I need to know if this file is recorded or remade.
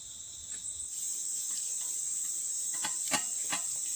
recorded